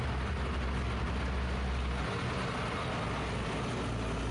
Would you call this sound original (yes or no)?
yes